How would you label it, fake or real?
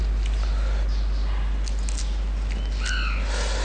real